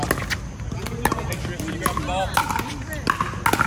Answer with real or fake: real